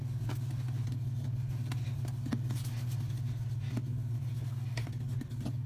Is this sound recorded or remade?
recorded